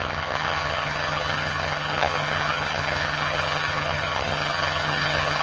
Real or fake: fake